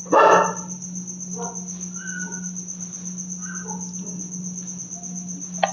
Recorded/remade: recorded